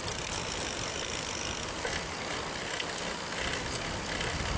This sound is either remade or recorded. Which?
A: recorded